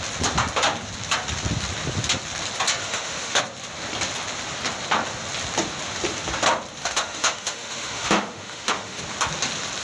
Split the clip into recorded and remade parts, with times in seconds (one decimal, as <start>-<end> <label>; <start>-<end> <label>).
0.0-2.8 recorded; 2.8-3.4 remade; 3.4-6.8 recorded; 6.8-9.0 remade; 9.0-9.8 recorded